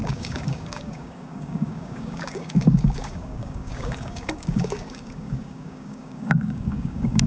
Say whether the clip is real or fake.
fake